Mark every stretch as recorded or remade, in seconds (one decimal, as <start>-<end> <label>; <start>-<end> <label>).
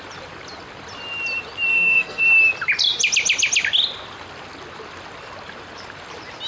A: 0.0-1.7 recorded; 1.7-2.2 remade; 2.2-6.5 recorded